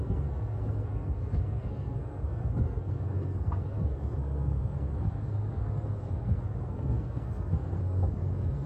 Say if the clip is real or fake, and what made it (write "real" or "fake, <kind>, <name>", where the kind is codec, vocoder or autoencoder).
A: fake, codec, SNAC